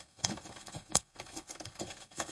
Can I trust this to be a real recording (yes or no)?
no